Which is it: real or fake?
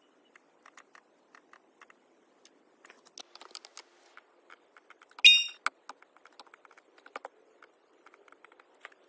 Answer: real